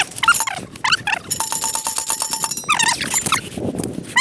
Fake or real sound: real